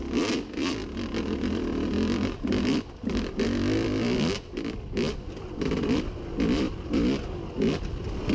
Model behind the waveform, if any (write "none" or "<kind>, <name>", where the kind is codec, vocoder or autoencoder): none